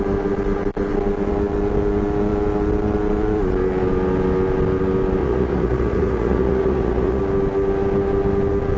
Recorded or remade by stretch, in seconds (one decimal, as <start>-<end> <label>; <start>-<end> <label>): 0.0-5.2 recorded; 5.2-7.2 remade; 7.2-8.8 recorded